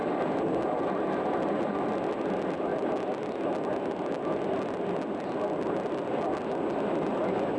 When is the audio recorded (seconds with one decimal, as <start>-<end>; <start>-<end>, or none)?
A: 0.0-7.6